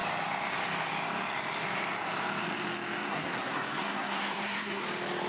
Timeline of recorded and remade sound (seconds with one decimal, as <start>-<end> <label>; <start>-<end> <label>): 0.0-3.1 recorded; 3.1-4.8 remade; 4.8-5.3 recorded